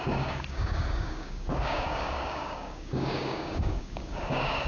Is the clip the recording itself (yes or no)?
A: no